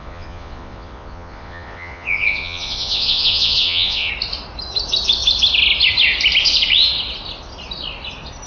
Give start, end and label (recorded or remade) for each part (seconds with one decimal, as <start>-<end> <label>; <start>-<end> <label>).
0.0-4.1 remade; 4.1-8.5 recorded